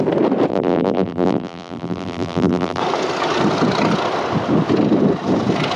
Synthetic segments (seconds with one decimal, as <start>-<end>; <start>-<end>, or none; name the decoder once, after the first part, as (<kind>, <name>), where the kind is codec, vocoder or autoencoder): 0.5-2.8 (vocoder, BigVGAN v2)